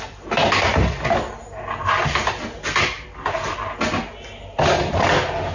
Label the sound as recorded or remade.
recorded